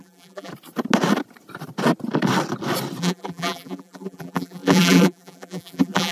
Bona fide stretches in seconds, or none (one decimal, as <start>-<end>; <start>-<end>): 0.5-3.0